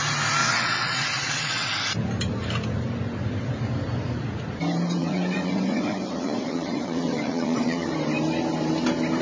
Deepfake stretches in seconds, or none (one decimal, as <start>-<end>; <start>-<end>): 0.4-1.9; 5.0-7.9